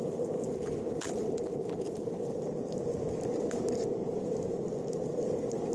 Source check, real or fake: real